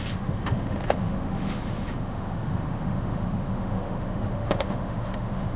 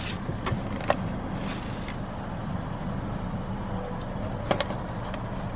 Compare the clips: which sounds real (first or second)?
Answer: second